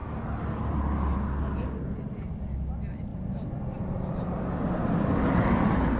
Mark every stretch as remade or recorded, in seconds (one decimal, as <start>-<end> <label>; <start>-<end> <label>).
0.0-6.0 recorded